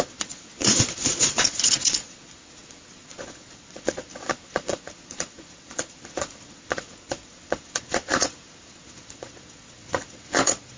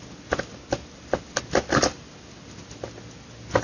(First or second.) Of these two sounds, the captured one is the second